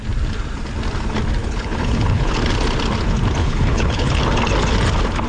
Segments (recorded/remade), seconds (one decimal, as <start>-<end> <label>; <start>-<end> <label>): 0.0-1.4 recorded; 1.4-2.3 remade; 2.3-3.4 recorded; 3.4-4.2 remade; 4.2-5.3 recorded